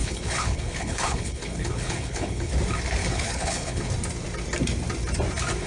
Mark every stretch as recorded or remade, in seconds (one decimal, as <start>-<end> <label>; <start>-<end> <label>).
0.0-2.5 remade; 2.5-3.0 recorded; 3.0-3.9 remade; 3.9-5.7 recorded